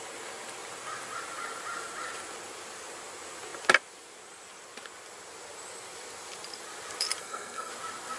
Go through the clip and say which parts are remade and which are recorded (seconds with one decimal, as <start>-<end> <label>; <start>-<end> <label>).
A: 0.0-7.2 recorded; 7.2-7.7 remade; 7.7-8.2 recorded